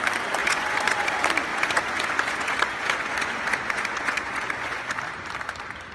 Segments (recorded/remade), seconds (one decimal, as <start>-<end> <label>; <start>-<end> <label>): 0.0-0.4 recorded; 0.4-1.1 remade; 1.1-1.5 recorded; 1.5-5.0 remade; 5.0-5.9 recorded